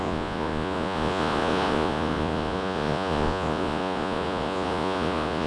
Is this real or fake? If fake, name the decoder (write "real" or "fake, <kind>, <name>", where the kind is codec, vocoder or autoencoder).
fake, vocoder, Vocos